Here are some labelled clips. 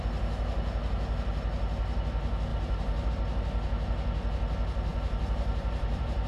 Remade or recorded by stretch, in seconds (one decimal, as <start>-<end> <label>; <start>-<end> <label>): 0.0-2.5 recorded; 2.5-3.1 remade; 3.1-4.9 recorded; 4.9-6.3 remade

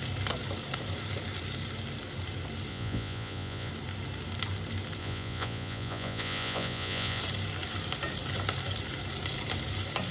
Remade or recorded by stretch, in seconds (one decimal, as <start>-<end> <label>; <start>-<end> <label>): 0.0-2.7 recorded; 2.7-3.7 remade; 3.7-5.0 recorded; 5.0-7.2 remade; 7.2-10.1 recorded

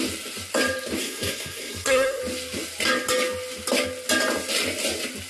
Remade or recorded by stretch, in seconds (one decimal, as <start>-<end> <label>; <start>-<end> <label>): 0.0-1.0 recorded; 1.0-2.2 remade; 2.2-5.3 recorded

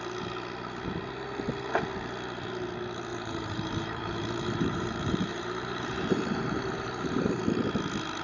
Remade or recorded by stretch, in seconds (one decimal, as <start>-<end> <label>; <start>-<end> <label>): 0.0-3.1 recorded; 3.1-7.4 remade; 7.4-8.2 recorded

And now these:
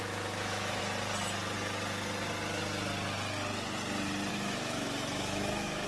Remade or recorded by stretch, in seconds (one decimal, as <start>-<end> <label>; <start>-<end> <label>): 0.0-0.8 remade; 0.8-4.3 recorded; 4.3-5.9 remade

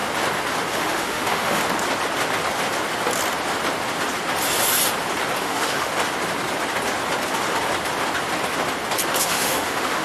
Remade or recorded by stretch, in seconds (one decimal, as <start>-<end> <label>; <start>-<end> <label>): 0.0-0.7 recorded; 0.7-1.6 remade; 1.6-5.4 recorded; 5.4-5.9 remade; 5.9-9.2 recorded; 9.2-10.0 remade

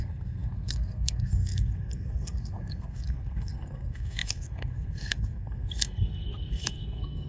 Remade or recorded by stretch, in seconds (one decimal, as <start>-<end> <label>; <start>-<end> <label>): 0.0-7.3 remade